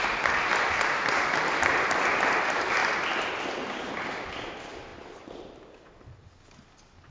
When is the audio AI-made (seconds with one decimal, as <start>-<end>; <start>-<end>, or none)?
none